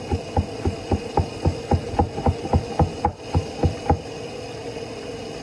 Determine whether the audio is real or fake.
real